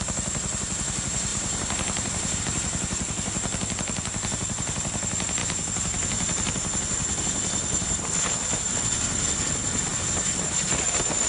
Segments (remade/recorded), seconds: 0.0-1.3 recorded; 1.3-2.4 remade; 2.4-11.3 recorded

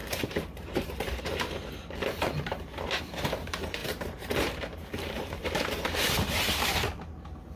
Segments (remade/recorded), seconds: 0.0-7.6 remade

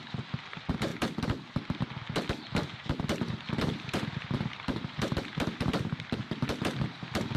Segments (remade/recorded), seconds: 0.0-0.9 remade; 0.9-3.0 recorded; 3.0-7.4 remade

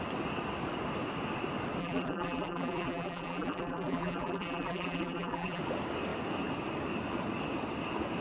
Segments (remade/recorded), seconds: 0.0-1.8 recorded; 1.8-5.6 remade; 5.6-8.2 recorded

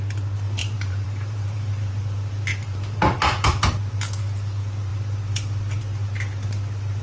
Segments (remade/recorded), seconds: 0.0-0.6 recorded; 0.6-1.9 remade; 1.9-2.5 recorded; 2.5-3.0 remade; 3.0-7.0 recorded